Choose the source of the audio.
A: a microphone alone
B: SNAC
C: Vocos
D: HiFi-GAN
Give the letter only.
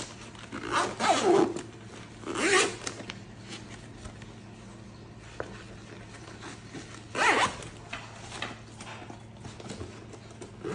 A